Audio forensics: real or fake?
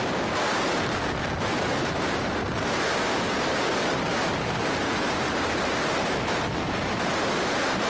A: fake